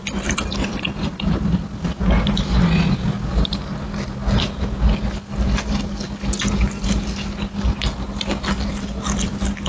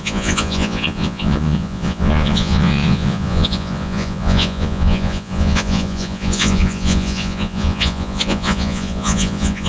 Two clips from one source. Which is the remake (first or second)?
second